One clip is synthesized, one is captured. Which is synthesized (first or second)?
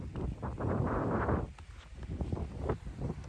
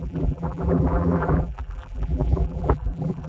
second